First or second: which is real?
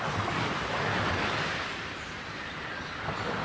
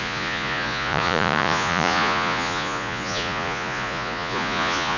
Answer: first